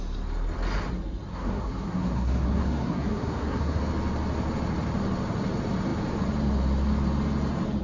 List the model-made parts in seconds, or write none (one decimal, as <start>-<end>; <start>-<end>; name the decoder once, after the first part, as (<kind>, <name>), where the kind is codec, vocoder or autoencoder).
1.3-3.8 (codec, SNAC)